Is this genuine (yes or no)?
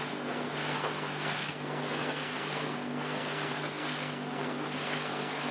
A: no